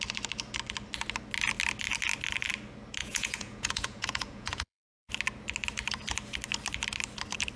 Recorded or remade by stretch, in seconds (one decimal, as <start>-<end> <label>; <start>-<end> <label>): 0.0-3.0 recorded; 3.0-5.1 remade; 5.1-7.6 recorded